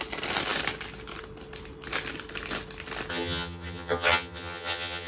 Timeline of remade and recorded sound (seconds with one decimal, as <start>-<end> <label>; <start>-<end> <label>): 0.0-3.1 recorded; 3.1-5.1 remade